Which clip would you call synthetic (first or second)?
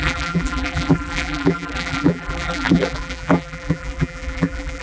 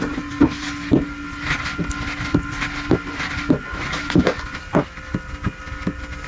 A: first